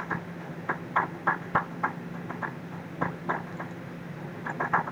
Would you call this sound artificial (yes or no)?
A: no